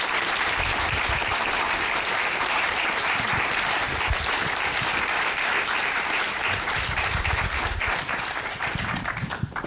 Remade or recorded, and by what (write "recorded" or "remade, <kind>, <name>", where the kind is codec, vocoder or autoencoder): remade, vocoder, BigVGAN v2